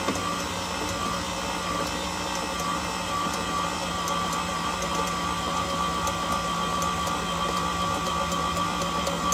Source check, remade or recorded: recorded